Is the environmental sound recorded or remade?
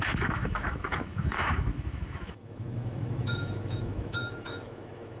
remade